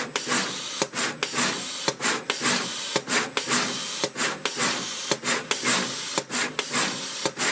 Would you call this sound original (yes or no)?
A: yes